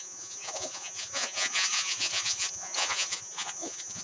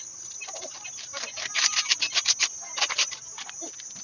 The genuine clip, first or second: second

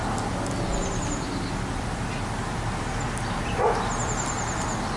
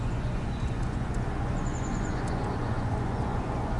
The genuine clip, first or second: first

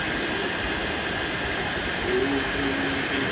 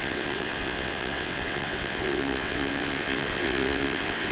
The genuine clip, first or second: first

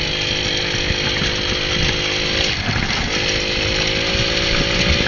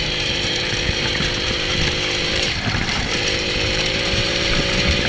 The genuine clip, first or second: first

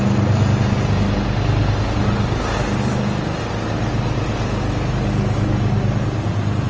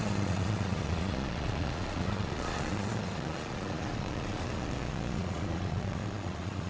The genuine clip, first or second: first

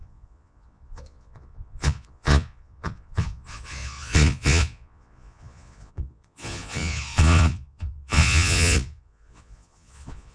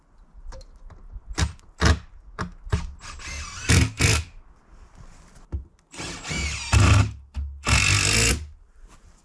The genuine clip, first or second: second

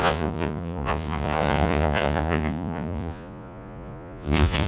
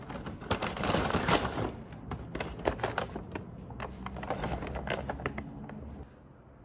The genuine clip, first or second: second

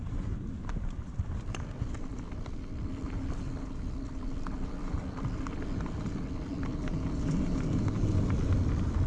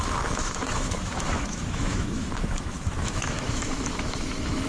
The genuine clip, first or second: first